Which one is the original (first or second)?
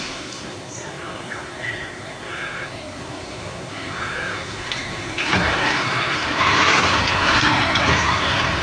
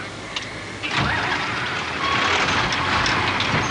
second